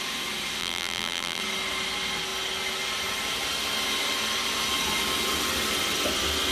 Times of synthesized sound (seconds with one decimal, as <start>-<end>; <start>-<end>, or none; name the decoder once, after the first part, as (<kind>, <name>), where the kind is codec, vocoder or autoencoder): 0.6-1.4 (vocoder, BigVGAN v2)